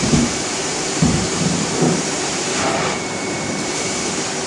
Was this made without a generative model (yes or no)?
no